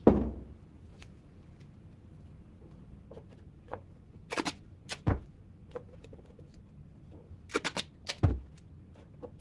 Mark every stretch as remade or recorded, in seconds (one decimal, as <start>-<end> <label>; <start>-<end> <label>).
0.0-0.9 recorded; 0.9-1.5 remade; 1.5-3.2 recorded; 3.2-6.6 remade; 6.6-9.4 recorded